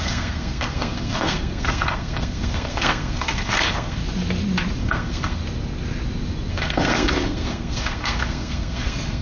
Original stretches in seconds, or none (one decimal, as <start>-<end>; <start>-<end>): 4.0-4.8; 5.4-6.5